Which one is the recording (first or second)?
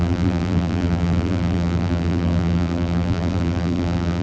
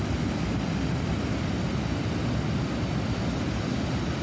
second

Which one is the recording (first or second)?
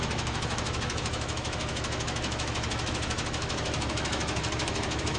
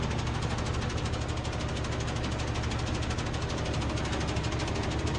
second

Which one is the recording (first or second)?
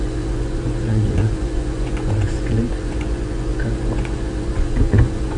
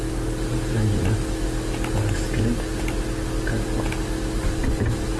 second